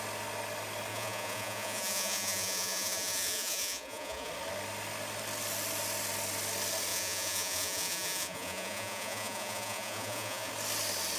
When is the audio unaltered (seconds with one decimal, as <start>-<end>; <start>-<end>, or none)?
0.0-0.9; 4.3-6.9; 10.5-11.2